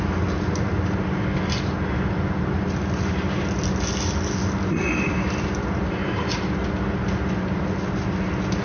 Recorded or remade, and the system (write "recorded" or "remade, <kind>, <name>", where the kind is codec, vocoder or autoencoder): recorded